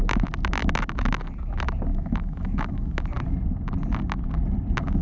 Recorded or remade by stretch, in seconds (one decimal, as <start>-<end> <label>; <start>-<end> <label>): 0.0-1.9 recorded; 1.9-3.0 remade; 3.0-5.0 recorded

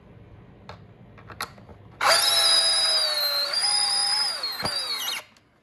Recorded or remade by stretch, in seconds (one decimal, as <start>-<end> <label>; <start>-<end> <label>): 0.0-5.6 recorded

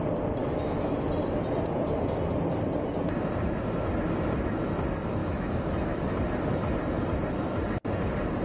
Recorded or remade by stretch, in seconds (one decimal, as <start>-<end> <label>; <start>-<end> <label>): 0.0-0.4 recorded; 0.4-0.9 remade; 0.9-5.2 recorded; 5.2-6.0 remade; 6.0-8.4 recorded

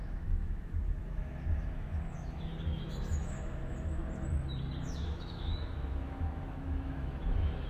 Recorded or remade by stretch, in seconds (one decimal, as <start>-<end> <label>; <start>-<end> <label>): 0.0-4.0 remade; 4.0-4.8 recorded; 4.8-7.7 remade

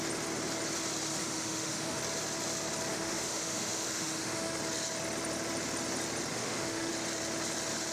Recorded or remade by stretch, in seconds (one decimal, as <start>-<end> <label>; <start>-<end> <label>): 0.0-1.2 recorded; 1.2-2.0 remade; 2.0-2.9 recorded; 2.9-4.6 remade; 4.6-6.3 recorded; 6.3-6.9 remade; 6.9-7.9 recorded

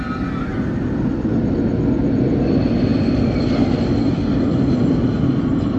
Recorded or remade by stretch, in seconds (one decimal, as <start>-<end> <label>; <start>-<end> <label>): 0.0-5.8 recorded